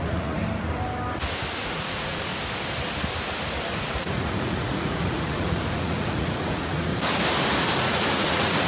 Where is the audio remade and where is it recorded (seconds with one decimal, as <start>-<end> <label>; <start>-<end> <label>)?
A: 0.0-0.4 remade; 0.4-1.6 recorded; 1.6-2.3 remade; 2.3-3.7 recorded; 3.7-6.9 remade; 6.9-7.8 recorded; 7.8-8.7 remade